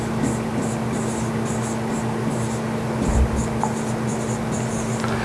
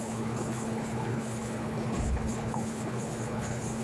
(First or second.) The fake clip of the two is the second